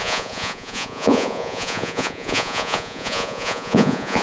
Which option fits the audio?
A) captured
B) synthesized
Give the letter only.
B